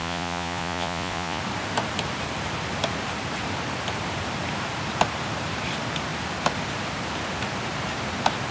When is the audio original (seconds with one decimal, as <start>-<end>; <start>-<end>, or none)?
1.4-8.5